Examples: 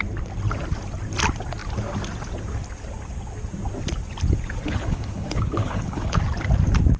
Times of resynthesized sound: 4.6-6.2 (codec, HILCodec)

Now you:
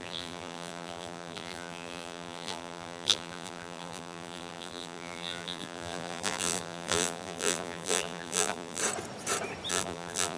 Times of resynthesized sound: 0.0-8.8 (vocoder, BigVGAN v2); 9.7-10.4

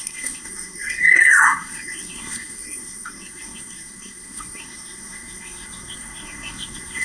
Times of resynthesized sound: 0.0-7.0 (codec, SNAC)